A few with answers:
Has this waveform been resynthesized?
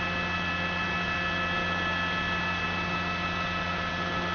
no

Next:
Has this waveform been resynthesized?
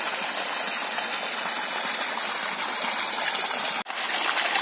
no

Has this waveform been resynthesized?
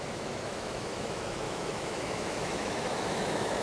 yes